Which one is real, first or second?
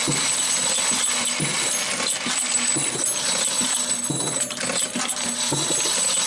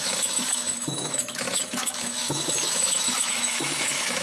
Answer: first